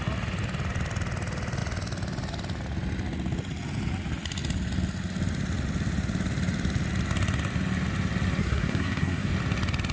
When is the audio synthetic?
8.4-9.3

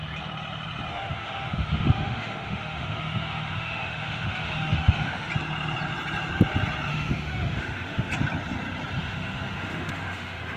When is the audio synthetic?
0.9-5.3; 6.9-8.1; 9.0-10.6

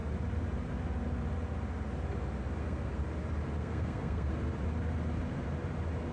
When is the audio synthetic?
2.6-3.0; 3.6-4.3

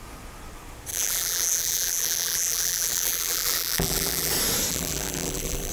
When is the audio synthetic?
0.9-4.3; 4.7-5.7

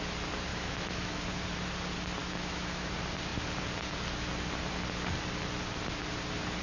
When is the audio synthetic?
0.5-1.2; 2.2-2.9

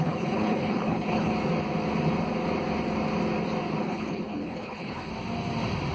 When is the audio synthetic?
0.0-1.3; 3.8-5.1

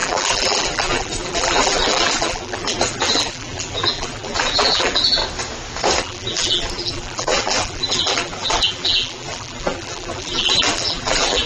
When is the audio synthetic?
0.0-5.2; 6.0-11.5